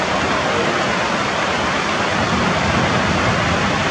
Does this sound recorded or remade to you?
recorded